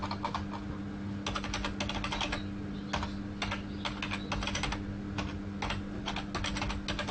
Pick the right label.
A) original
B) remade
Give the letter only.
A